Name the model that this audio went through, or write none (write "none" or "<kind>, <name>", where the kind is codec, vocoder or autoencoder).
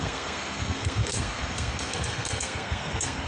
codec, SNAC